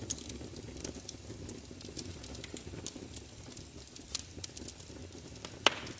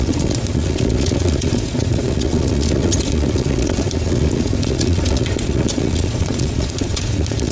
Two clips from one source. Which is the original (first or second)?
first